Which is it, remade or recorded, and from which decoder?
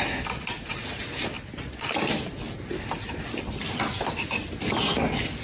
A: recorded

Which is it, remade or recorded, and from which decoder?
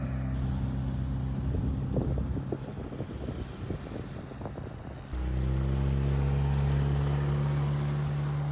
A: recorded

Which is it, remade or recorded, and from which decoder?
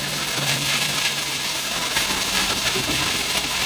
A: remade, vocoder, BigVGAN v2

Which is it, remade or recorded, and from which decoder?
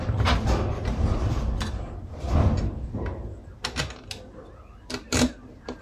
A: recorded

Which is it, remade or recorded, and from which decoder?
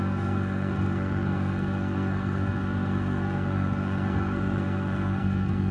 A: remade, codec, SNAC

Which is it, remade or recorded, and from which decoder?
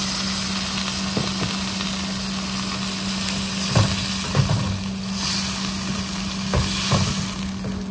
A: recorded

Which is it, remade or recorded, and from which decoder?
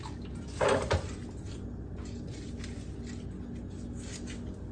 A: recorded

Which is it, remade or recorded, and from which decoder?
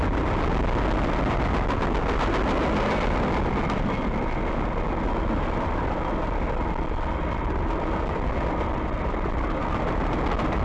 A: recorded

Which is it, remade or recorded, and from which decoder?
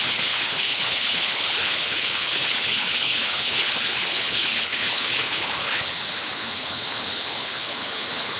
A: remade, codec, HILCodec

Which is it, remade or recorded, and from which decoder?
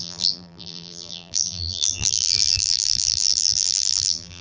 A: remade, vocoder, BigVGAN v2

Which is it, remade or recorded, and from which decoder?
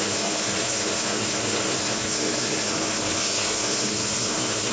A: remade, codec, SNAC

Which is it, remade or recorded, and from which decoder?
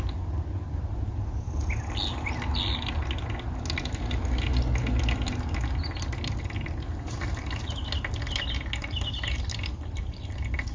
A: recorded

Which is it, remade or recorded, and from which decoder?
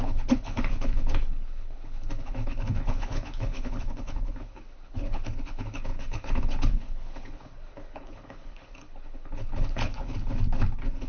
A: remade, codec, HILCodec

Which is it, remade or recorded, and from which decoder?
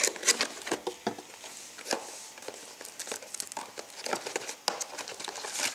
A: recorded